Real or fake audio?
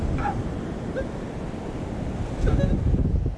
real